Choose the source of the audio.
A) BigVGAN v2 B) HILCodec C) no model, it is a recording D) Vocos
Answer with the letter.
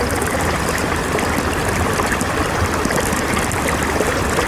C